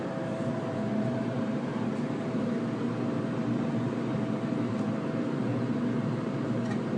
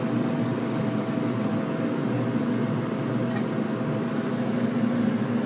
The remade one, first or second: first